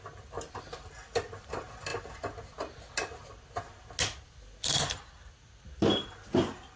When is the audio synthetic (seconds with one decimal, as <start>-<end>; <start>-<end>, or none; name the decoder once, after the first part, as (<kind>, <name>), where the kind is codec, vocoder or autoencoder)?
none